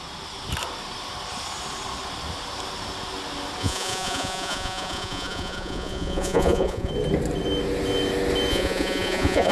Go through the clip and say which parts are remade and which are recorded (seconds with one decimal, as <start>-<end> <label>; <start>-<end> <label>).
0.0-3.6 recorded; 3.6-6.9 remade; 6.9-8.5 recorded; 8.5-9.5 remade